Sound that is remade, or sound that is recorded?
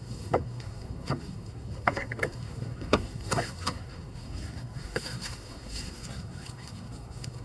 remade